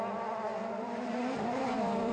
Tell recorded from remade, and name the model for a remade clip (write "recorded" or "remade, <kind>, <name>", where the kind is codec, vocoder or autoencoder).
remade, vocoder, BigVGAN v2